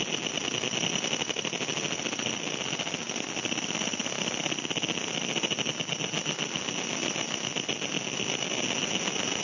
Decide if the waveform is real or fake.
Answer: real